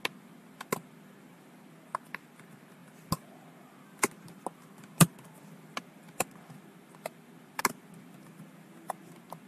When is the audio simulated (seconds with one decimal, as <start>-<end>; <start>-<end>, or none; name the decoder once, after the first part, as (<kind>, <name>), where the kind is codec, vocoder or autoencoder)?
none